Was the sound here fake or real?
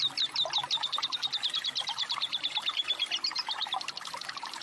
fake